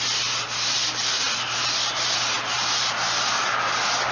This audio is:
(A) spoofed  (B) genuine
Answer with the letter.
B